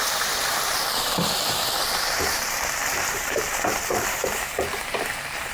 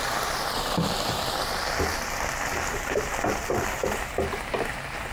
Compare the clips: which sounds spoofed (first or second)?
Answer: first